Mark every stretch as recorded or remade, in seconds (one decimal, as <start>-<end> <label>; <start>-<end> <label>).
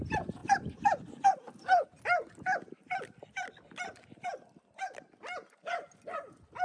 0.0-6.6 recorded